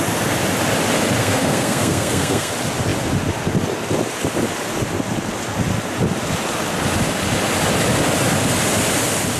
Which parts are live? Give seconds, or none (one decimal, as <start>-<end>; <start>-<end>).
0.0-1.2; 2.5-9.4